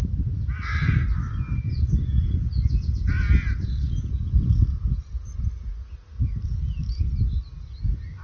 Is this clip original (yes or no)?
yes